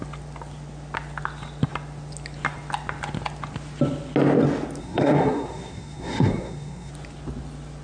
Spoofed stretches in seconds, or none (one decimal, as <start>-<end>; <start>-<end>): 4.8-6.9